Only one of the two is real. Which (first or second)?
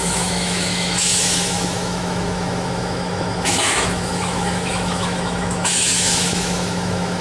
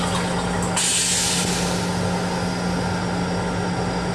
second